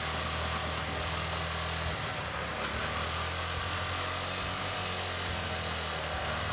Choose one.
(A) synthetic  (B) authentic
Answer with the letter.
B